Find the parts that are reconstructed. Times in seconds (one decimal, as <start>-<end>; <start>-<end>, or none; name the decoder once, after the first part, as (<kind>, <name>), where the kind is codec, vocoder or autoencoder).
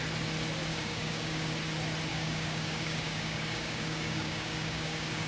0.7-1.5 (codec, DAC); 2.1-5.3